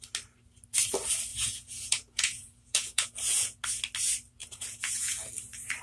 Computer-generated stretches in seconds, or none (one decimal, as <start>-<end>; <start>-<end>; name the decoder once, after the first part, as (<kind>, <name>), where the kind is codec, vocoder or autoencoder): 1.3-3.6 (vocoder, Vocos); 4.4-5.3